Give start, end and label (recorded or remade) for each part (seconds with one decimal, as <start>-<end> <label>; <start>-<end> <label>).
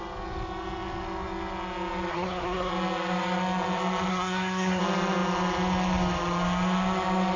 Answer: 0.0-2.1 recorded; 2.1-2.7 remade; 2.7-4.1 recorded; 4.1-4.8 remade; 4.8-7.4 recorded